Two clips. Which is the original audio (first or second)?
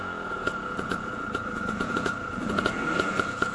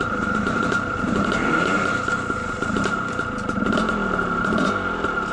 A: second